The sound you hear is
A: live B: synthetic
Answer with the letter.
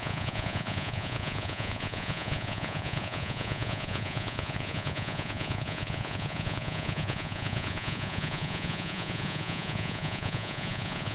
B